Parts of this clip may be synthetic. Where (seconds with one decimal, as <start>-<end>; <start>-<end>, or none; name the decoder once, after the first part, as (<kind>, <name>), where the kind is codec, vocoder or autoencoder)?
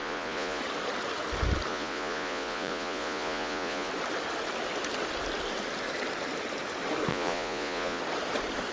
0.0-0.6 (vocoder, Vocos); 1.7-3.9; 7.1-8.0